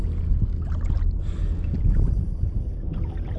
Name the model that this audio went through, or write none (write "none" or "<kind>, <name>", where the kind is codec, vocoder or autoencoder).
none